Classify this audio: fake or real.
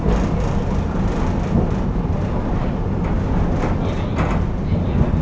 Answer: real